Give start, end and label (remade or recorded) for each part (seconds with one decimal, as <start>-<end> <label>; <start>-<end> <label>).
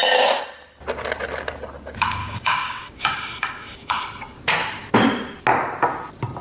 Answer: 0.0-2.2 recorded; 2.2-4.0 remade; 4.0-6.4 recorded